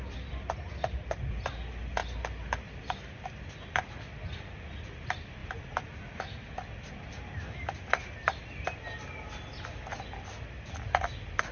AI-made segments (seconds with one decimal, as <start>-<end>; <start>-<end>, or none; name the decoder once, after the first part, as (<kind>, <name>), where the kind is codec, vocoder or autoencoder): none